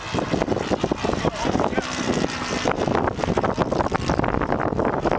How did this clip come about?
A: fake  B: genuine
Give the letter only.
B